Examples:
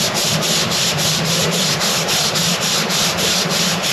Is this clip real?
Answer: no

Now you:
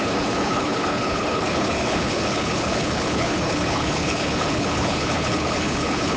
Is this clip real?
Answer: no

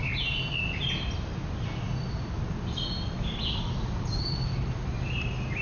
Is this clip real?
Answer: yes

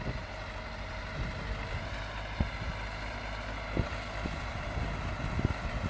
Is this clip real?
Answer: yes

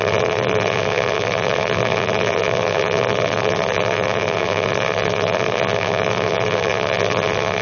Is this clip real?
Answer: no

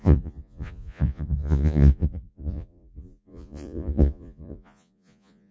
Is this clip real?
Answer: no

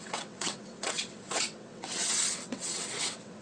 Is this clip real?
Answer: no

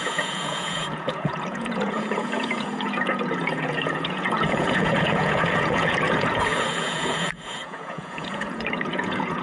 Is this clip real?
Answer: no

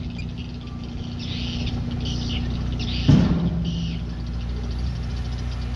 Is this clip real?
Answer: yes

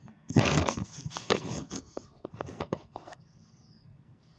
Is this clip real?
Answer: no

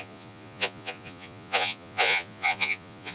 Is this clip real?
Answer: no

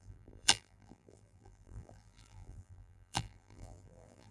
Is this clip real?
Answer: no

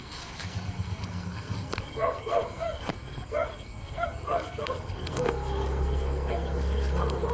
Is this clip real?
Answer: no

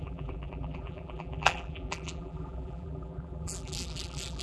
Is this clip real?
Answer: no